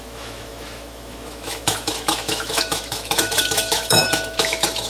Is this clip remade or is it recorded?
remade